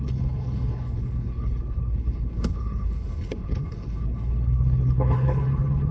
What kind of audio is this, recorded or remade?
remade